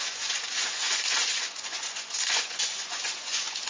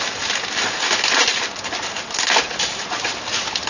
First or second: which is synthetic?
first